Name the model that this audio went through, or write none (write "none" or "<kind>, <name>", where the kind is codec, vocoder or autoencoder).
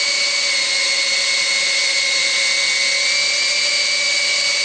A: none